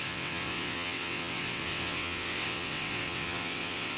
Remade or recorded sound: remade